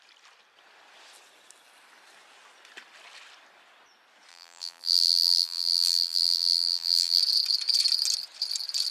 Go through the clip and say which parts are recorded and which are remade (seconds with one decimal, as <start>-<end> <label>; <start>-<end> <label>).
0.0-4.3 recorded; 4.3-7.2 remade; 7.2-8.9 recorded

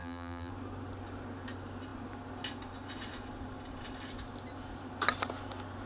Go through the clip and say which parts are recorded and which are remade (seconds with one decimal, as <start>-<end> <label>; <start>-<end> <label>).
0.0-0.5 remade; 0.5-5.9 recorded

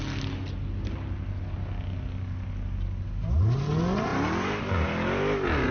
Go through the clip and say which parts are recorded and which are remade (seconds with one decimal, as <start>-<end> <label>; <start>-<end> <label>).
0.0-5.7 recorded

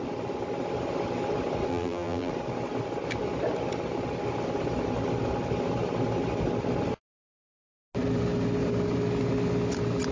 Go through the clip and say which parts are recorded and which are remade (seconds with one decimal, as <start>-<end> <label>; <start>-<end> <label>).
0.0-1.7 recorded; 1.7-2.3 remade; 2.3-10.1 recorded